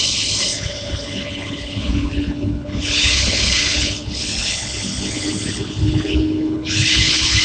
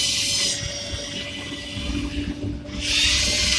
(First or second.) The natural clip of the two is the second